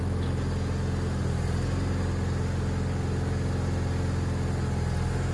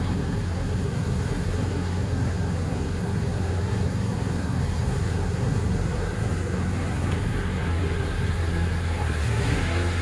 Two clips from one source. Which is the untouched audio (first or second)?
first